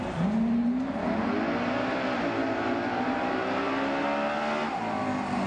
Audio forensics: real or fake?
real